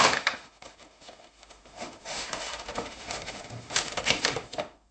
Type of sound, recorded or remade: remade